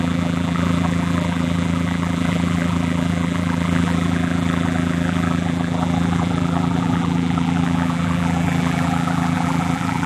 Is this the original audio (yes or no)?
no